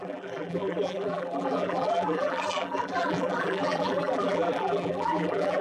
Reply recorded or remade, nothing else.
remade